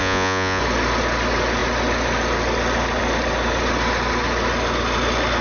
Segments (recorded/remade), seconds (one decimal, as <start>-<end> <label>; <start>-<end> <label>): 0.0-0.6 remade; 0.6-5.4 recorded